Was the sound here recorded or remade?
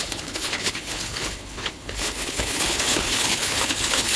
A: remade